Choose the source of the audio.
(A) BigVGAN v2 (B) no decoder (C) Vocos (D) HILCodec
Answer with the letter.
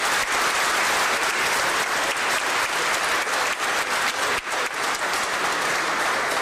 B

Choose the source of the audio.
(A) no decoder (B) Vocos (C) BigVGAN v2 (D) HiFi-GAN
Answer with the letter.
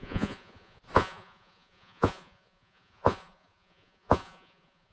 B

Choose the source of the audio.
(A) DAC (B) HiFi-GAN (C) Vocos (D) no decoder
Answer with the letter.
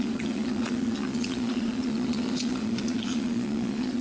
C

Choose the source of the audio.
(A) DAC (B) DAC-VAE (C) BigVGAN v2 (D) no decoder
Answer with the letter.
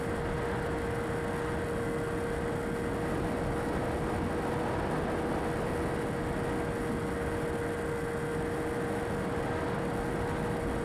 D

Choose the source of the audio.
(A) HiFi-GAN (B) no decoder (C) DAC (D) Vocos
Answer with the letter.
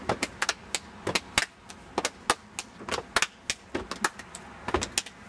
B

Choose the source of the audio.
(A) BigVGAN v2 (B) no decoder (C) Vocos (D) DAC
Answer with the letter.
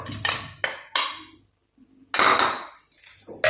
B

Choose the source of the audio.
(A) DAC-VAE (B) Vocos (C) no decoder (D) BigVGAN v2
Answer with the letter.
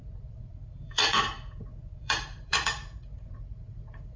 B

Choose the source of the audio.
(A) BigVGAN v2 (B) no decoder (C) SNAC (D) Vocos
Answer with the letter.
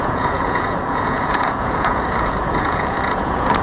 D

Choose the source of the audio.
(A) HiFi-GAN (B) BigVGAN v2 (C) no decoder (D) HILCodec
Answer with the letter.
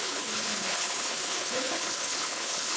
D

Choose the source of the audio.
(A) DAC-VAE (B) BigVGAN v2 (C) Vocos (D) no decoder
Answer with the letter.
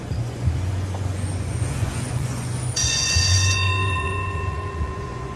C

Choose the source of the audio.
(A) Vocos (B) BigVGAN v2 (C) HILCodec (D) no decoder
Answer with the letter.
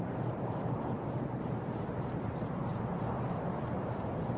B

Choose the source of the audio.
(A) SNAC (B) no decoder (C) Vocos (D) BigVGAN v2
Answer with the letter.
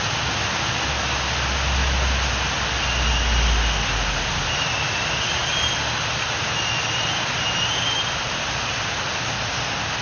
B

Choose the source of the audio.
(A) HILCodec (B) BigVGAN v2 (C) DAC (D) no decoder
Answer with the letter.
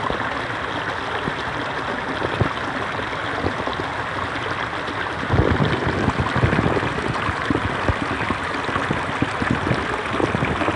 D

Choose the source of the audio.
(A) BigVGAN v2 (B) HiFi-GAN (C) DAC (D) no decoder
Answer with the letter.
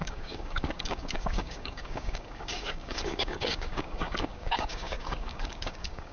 C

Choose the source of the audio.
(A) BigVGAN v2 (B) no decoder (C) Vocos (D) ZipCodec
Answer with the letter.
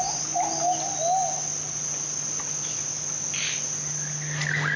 B